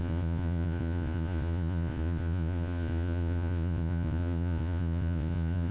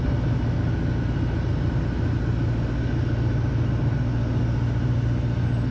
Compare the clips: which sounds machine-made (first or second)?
first